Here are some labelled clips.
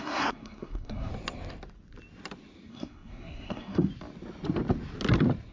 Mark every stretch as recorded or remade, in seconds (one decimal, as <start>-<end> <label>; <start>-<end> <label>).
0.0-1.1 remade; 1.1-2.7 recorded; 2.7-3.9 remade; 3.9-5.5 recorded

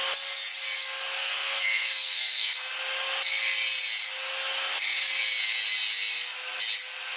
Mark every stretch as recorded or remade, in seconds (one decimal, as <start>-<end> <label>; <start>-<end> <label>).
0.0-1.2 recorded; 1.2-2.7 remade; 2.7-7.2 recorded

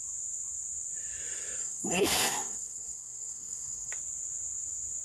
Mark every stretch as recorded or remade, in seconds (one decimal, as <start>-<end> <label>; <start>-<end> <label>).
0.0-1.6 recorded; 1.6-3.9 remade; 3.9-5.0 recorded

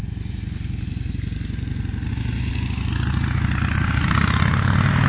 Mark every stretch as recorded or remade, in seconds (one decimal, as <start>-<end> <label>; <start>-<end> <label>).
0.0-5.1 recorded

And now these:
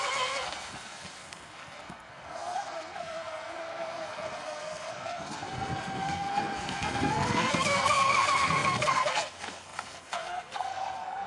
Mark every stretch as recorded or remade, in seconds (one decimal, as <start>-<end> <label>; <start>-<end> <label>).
0.0-11.3 remade